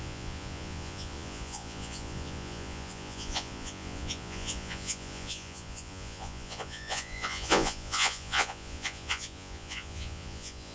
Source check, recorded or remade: remade